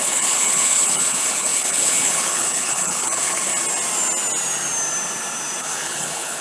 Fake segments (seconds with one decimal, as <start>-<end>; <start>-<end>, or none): 0.0-3.5; 5.6-6.4